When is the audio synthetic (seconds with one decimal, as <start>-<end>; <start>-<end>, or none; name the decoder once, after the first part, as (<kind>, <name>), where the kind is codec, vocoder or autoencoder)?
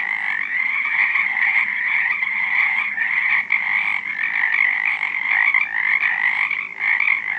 0.5-3.3 (vocoder, HiFi-GAN)